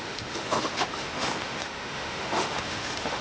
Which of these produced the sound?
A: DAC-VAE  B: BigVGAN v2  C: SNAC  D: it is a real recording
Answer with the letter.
A